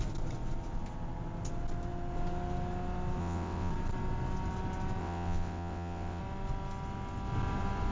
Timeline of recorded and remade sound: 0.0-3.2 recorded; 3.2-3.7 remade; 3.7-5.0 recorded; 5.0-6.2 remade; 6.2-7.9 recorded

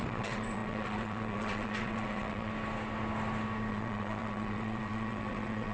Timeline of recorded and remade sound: 0.0-2.5 remade; 2.5-3.7 recorded; 3.7-5.7 remade

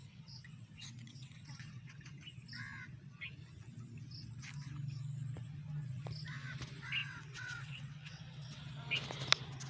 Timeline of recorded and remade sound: 0.0-2.1 remade; 2.1-7.0 recorded; 7.0-8.6 remade; 8.6-9.7 recorded

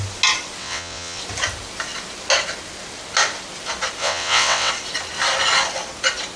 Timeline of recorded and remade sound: 0.0-0.6 recorded; 0.6-1.2 remade; 1.2-4.0 recorded; 4.0-4.7 remade; 4.7-6.4 recorded

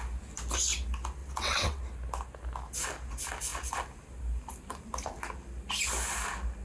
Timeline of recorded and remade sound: 0.0-1.2 recorded; 1.2-1.8 remade; 1.8-6.6 recorded

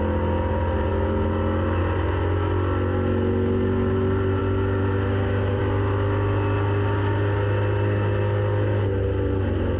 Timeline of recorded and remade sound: 0.0-9.8 recorded

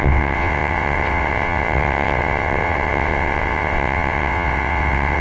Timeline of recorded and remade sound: 0.0-5.2 remade

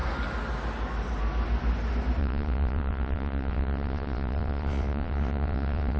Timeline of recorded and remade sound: 0.0-2.2 recorded; 2.2-6.0 remade